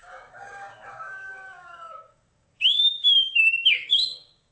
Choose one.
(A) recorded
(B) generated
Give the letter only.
B